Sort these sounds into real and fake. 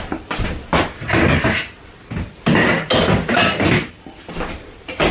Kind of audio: real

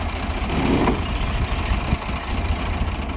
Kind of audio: real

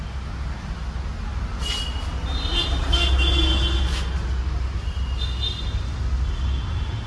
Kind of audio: real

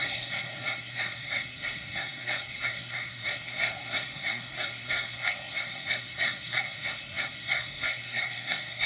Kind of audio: fake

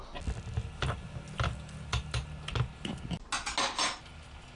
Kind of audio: real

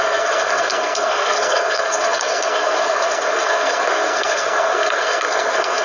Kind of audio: fake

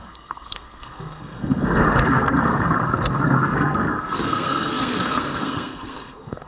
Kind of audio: fake